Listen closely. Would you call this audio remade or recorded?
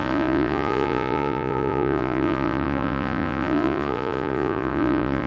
remade